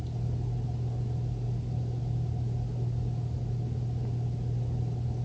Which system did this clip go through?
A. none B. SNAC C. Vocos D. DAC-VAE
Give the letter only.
A